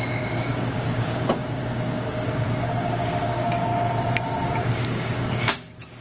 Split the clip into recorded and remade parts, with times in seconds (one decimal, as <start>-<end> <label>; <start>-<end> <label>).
0.0-3.7 remade; 3.7-4.5 recorded; 4.5-6.0 remade